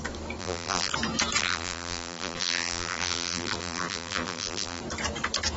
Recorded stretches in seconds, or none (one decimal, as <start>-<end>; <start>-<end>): 0.0-0.4; 0.9-1.4; 4.8-5.6